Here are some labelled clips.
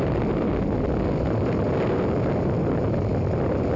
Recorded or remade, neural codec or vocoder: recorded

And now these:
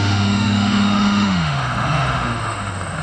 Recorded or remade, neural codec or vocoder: remade, autoencoder, DAC-VAE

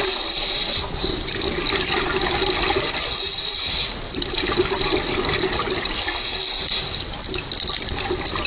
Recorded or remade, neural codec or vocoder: recorded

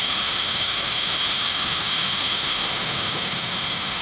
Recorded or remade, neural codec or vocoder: remade, autoencoder, DAC-VAE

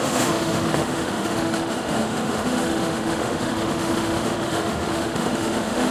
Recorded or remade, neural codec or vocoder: remade, autoencoder, DAC-VAE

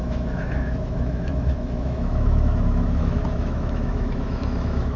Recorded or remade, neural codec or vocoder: remade, autoencoder, DAC-VAE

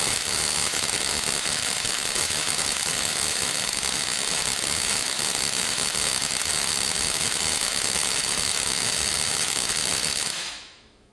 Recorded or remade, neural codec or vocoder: remade, autoencoder, DAC-VAE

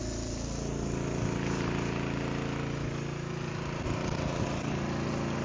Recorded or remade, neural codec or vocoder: recorded